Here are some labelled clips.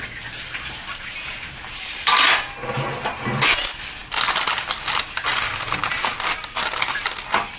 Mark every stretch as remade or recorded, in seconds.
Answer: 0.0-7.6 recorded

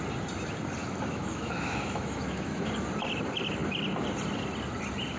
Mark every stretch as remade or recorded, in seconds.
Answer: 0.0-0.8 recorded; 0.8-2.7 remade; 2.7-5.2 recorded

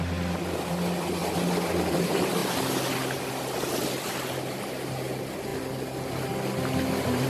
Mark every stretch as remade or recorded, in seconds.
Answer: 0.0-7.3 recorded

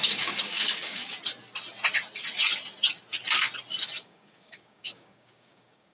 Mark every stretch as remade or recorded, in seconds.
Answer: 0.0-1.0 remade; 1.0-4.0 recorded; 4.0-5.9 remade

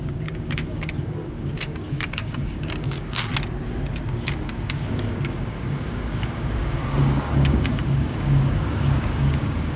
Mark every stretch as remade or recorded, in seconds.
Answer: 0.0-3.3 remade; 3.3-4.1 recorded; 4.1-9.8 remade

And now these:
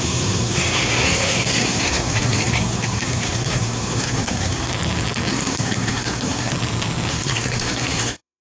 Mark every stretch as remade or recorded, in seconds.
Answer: 0.0-4.7 remade; 4.7-5.3 recorded; 5.3-6.5 remade; 6.5-7.1 recorded; 7.1-8.4 remade

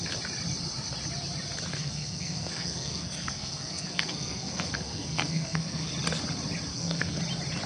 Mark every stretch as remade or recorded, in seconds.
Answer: 0.0-1.7 recorded; 1.7-5.9 remade; 5.9-6.7 recorded; 6.7-7.2 remade; 7.2-7.7 recorded

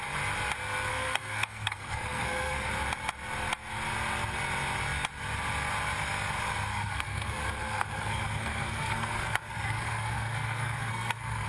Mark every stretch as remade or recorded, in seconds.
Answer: 0.0-0.9 recorded; 0.9-2.7 remade; 2.7-6.7 recorded; 6.7-11.5 remade